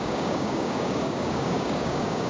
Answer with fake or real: fake